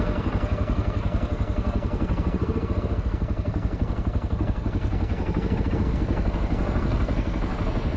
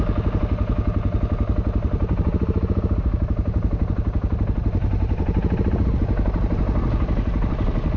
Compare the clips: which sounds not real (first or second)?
first